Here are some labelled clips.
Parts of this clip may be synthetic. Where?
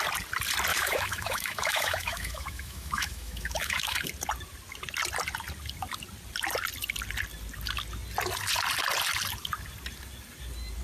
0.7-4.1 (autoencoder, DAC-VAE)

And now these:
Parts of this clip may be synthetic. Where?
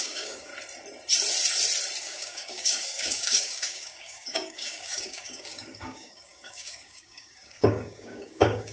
0.0-0.5 (codec, DAC); 2.0-8.7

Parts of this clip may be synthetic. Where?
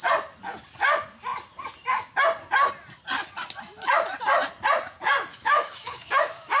5.3-6.6 (autoencoder, DAC-VAE)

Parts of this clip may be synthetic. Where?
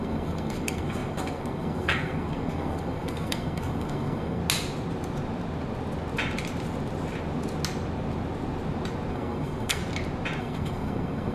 0.0-4.4 (codec, SNAC); 9.1-9.8; 10.4-11.3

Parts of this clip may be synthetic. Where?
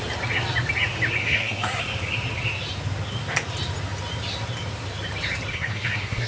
1.2-1.8 (codec, SNAC); 5.5-6.3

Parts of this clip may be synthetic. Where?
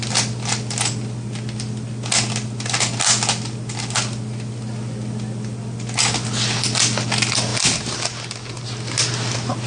none